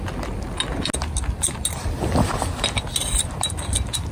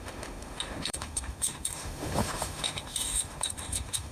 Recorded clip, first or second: first